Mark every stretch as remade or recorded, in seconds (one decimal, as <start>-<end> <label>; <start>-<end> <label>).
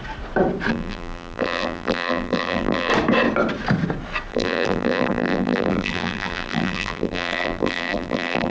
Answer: 0.0-0.7 recorded; 0.7-2.9 remade; 2.9-4.3 recorded; 4.3-8.5 remade